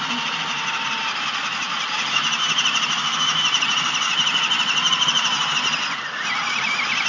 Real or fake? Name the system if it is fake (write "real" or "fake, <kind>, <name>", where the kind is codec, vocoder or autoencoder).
real